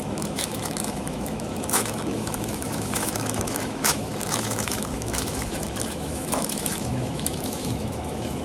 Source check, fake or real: fake